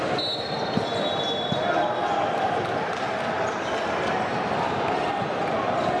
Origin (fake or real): real